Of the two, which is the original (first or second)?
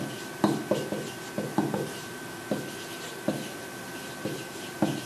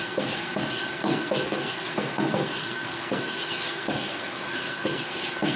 first